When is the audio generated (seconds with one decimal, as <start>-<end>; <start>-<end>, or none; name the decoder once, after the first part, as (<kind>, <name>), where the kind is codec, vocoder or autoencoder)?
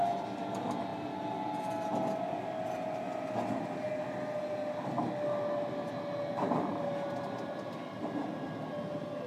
none